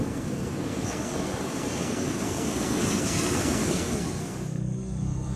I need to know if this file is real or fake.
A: fake